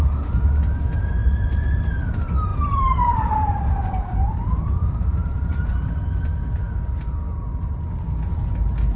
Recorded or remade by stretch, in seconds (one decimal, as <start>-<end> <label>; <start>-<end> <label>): 0.0-1.2 recorded; 1.2-1.8 remade; 1.8-2.5 recorded; 2.5-5.7 remade; 5.7-9.0 recorded